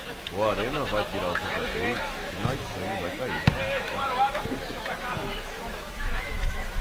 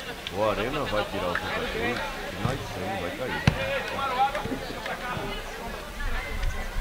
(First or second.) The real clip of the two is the second